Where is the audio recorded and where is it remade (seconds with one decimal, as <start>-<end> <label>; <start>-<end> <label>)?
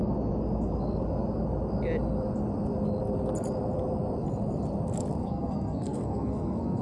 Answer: 0.0-5.2 recorded; 5.2-6.8 remade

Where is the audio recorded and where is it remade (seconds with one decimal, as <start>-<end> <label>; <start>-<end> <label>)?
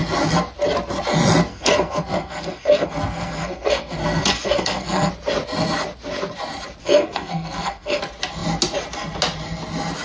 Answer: 0.0-1.5 recorded; 1.5-5.1 remade; 5.1-6.8 recorded; 6.8-8.0 remade; 8.0-10.0 recorded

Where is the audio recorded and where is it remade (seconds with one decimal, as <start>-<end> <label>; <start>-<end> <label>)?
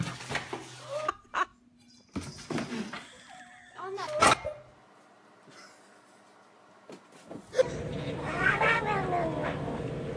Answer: 0.0-8.2 recorded; 8.2-8.8 remade; 8.8-10.2 recorded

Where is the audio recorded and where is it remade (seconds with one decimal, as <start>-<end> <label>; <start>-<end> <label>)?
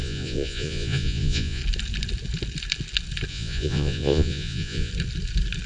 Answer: 0.0-1.6 remade; 1.6-3.3 recorded; 3.3-4.9 remade; 4.9-5.7 recorded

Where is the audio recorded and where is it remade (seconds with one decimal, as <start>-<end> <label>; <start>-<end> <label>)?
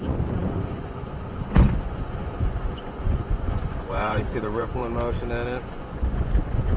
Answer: 0.0-4.8 remade; 4.8-5.6 recorded; 5.6-6.8 remade